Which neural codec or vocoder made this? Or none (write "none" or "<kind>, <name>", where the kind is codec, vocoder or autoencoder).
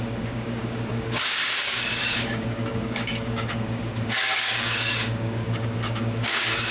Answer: codec, DAC